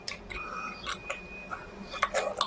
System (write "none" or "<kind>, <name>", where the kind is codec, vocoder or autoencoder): none